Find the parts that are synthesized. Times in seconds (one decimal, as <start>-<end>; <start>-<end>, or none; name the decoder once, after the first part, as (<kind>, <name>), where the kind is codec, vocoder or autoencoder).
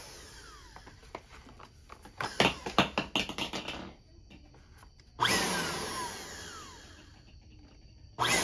none